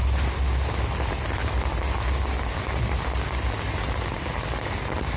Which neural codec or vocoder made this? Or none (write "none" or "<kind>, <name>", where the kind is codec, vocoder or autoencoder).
none